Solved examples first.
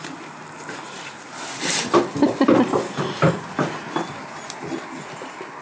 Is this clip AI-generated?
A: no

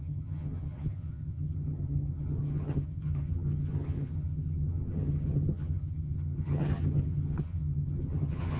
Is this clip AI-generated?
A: yes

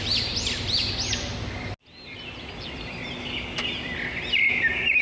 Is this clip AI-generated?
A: no